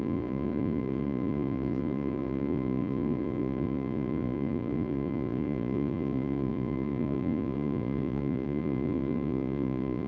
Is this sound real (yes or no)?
no